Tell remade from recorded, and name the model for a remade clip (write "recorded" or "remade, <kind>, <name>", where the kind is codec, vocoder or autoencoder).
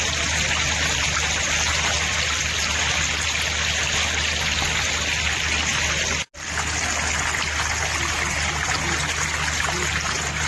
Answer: recorded